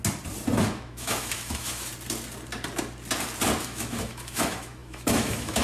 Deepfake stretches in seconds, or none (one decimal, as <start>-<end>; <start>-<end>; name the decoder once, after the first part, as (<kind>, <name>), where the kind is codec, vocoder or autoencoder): 0.6-1.9 (autoencoder, DAC-VAE); 3.6-5.6